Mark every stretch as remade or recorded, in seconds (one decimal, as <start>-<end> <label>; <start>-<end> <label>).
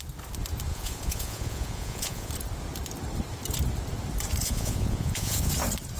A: 0.0-0.7 recorded; 0.7-2.3 remade; 2.3-4.4 recorded; 4.4-5.5 remade; 5.5-6.0 recorded